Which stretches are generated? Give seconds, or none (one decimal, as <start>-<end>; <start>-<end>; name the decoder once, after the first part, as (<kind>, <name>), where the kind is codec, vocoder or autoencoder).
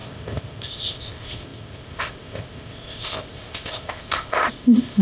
0.0-5.0 (codec, ZipCodec)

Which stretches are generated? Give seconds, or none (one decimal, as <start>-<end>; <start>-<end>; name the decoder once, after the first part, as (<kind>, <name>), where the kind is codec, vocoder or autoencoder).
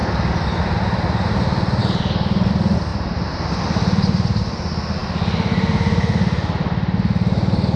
0.0-0.6 (codec, DAC); 1.8-2.5